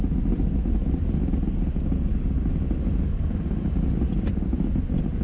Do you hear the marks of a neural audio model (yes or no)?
no